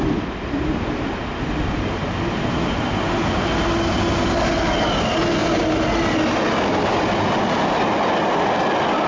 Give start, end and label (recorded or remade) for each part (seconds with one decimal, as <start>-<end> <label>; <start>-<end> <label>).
0.0-9.1 recorded